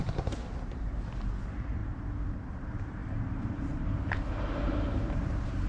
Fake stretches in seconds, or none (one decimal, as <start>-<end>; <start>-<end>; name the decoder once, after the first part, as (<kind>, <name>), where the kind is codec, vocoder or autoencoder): 0.0-1.3 (vocoder, BigVGAN v2); 3.0-5.7